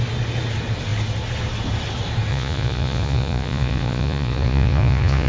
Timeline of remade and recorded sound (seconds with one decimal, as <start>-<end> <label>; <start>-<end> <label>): 0.0-2.3 recorded; 2.3-5.3 remade